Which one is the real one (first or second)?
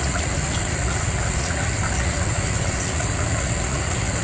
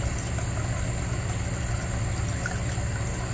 second